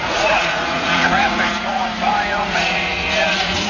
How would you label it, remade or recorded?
remade